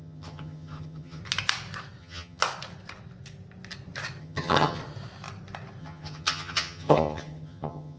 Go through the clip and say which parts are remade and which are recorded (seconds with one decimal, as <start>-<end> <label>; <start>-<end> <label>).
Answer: 0.0-1.2 remade; 1.2-2.0 recorded; 2.0-2.4 remade; 2.4-4.2 recorded; 4.2-4.8 remade; 4.8-5.8 recorded; 5.8-8.0 remade